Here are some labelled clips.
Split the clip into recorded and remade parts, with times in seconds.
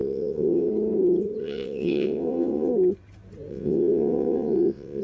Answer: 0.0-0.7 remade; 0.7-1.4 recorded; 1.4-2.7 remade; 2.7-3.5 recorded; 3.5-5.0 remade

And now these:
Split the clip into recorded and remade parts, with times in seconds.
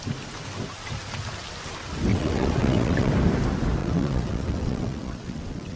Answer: 0.0-2.1 recorded; 2.1-3.1 remade; 3.1-3.8 recorded; 3.8-5.8 remade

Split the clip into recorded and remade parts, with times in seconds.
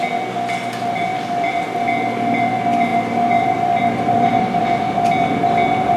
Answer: 0.0-1.1 recorded; 1.1-1.6 remade; 1.6-2.9 recorded; 2.9-4.6 remade; 4.6-6.0 recorded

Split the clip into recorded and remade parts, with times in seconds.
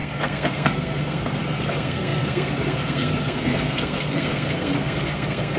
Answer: 0.0-5.6 remade